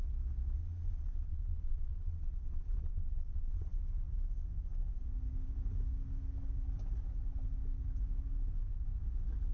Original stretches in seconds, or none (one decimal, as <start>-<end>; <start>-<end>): 0.0-0.6; 3.8-9.5